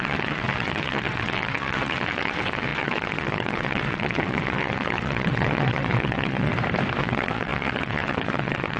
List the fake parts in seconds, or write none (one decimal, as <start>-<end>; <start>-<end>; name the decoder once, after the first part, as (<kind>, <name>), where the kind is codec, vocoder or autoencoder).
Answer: 0.0-6.5 (vocoder, WaveNeXt); 7.0-8.8